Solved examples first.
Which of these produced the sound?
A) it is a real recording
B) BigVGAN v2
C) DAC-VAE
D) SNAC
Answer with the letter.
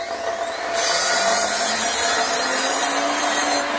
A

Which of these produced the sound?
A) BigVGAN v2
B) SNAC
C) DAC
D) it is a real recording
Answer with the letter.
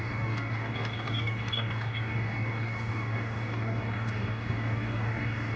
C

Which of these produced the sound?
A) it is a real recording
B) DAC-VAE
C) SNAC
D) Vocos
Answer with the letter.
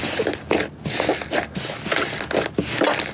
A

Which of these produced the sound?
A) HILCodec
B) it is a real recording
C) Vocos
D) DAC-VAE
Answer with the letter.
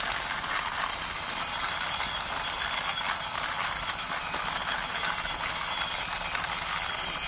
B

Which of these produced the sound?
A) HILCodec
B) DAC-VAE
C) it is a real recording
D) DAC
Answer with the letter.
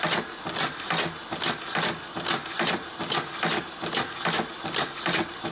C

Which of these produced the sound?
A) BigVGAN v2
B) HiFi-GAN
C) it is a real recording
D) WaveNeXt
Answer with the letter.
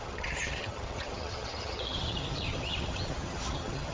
B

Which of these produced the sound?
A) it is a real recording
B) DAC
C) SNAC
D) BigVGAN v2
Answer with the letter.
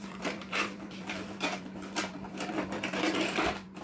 D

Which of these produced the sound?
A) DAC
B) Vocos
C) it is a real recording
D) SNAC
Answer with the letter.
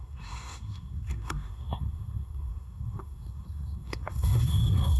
D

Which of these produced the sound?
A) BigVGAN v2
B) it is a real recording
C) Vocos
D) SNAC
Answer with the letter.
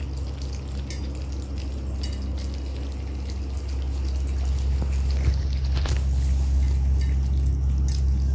B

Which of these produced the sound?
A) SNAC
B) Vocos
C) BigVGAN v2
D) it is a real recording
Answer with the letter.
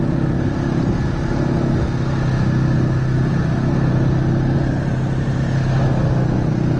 D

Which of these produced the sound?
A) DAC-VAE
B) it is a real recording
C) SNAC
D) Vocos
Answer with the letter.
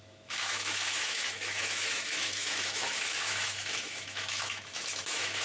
A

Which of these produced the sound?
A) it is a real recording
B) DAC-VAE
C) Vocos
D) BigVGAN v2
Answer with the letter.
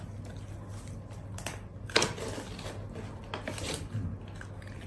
A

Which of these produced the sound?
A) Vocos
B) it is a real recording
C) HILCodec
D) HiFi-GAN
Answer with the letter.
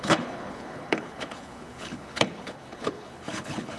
C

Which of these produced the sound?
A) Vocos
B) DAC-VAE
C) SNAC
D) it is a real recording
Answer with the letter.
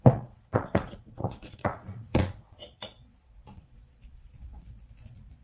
A